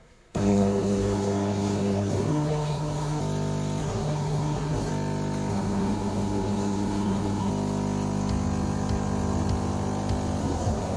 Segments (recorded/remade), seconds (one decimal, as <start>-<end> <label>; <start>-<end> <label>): 0.0-3.2 remade; 3.2-3.8 recorded; 3.8-4.9 remade; 4.9-5.5 recorded; 5.5-7.5 remade; 7.5-10.4 recorded; 10.4-11.0 remade